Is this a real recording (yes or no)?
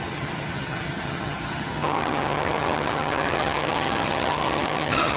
no